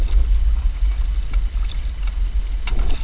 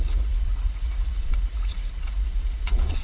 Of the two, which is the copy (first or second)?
second